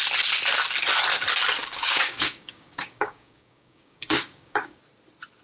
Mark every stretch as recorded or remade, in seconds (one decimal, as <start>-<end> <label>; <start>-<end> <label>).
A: 0.0-1.6 recorded; 1.6-4.8 remade; 4.8-5.4 recorded